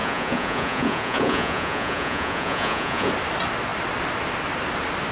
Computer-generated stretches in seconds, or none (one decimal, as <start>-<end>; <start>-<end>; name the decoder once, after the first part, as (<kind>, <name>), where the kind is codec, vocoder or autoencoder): 0.0-3.1 (vocoder, Vocos)